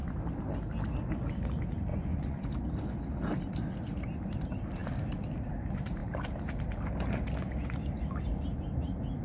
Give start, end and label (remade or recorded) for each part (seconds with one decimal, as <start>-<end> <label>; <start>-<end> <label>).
0.0-1.9 recorded; 1.9-2.5 remade; 2.5-9.2 recorded